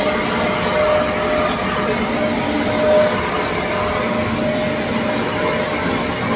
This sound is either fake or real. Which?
real